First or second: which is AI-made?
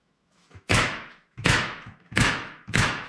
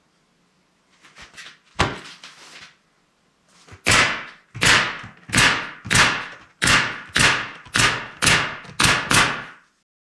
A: first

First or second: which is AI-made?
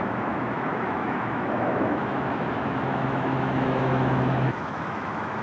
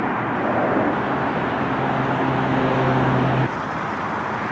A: first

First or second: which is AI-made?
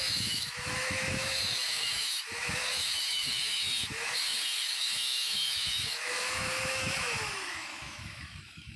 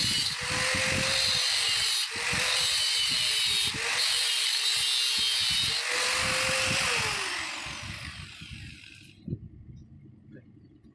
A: first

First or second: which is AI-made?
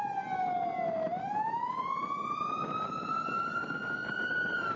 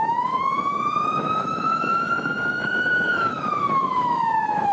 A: second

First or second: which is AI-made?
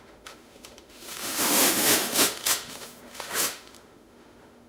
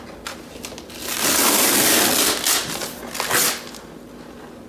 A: first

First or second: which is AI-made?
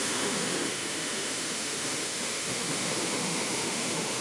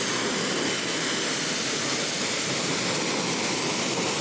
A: first